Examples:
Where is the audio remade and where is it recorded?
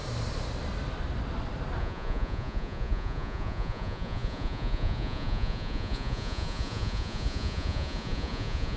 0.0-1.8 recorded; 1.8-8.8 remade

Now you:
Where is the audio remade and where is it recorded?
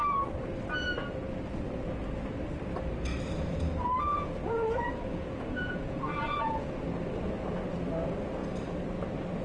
0.0-4.1 recorded; 4.1-6.7 remade; 6.7-9.4 recorded